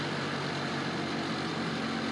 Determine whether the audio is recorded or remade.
recorded